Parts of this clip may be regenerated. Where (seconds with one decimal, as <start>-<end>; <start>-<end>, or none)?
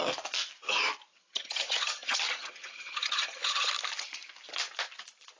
1.1-3.7